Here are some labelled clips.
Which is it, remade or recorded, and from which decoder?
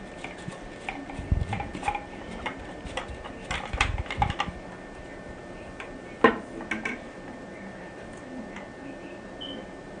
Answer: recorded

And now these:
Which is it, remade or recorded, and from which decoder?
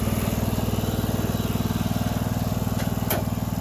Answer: recorded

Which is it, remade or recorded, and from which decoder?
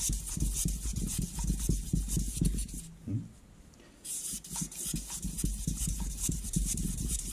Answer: recorded